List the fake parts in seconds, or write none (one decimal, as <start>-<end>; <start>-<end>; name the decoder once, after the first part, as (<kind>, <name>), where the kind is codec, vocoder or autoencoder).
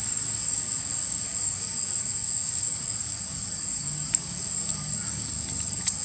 0.0-6.0 (codec, DAC)